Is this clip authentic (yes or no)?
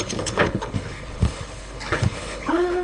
no